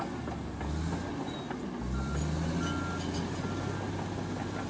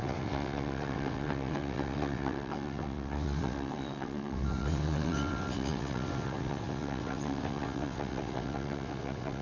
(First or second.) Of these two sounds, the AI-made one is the second